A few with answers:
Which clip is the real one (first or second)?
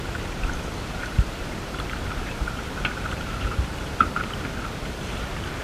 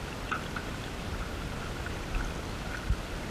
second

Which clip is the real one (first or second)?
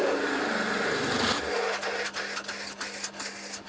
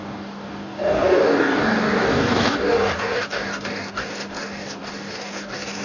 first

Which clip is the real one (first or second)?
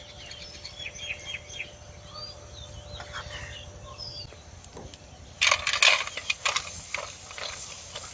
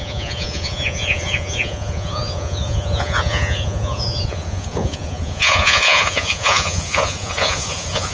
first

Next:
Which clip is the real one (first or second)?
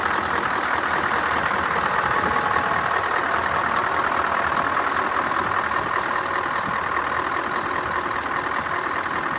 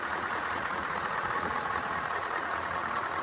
first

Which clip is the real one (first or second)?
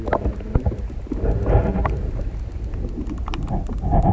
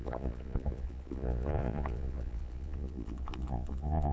first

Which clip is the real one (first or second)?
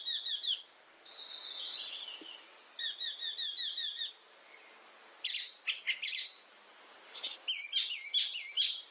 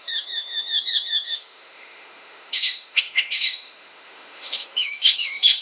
first